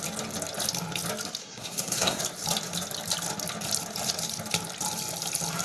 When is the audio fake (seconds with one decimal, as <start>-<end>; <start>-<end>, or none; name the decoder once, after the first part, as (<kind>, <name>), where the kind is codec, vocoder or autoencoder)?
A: 1.4-2.2 (codec, SNAC)